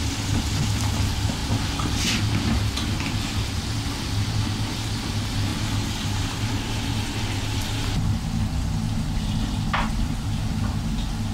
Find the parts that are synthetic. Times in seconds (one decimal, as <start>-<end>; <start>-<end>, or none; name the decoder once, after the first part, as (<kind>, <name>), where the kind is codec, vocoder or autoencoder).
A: none